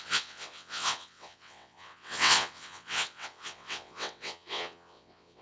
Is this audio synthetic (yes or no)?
yes